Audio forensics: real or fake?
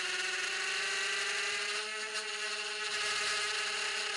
real